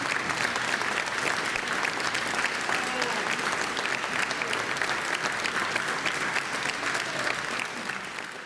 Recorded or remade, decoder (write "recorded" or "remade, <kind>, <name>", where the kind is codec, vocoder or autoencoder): recorded